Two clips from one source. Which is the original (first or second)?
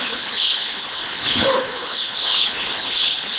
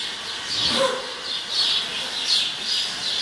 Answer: second